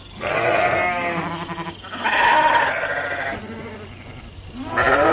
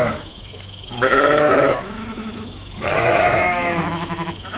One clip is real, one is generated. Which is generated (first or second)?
second